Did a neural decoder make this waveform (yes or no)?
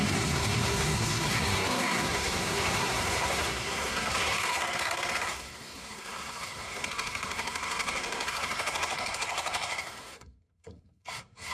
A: yes